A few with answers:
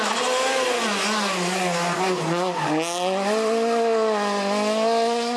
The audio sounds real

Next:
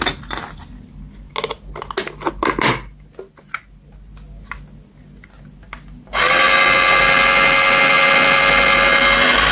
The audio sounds real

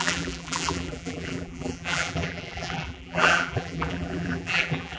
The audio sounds fake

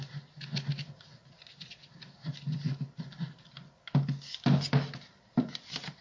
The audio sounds real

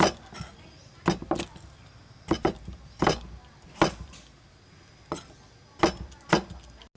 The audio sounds real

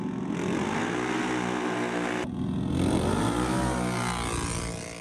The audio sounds real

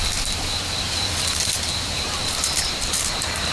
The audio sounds fake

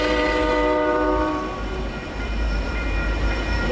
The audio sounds fake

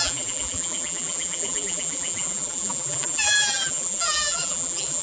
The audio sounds fake